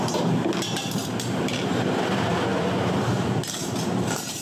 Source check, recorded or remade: remade